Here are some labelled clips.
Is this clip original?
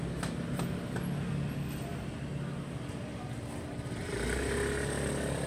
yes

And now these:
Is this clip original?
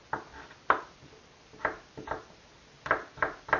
yes